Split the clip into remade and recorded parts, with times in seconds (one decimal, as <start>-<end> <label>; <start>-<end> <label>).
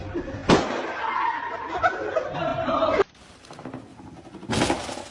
0.0-2.5 recorded; 2.5-3.1 remade; 3.1-5.1 recorded